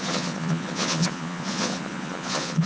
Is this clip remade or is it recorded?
remade